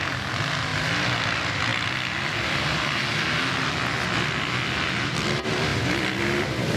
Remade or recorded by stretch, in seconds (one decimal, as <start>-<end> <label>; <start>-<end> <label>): 0.0-6.8 recorded